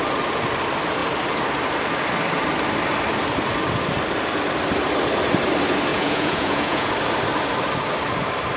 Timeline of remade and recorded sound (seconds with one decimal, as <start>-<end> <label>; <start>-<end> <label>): 0.0-5.9 recorded; 5.9-6.9 remade; 6.9-8.6 recorded